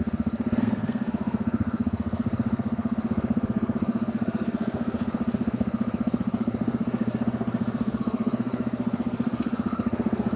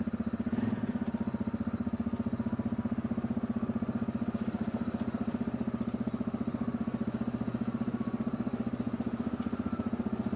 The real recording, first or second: second